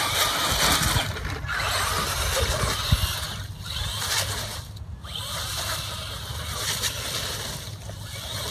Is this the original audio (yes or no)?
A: yes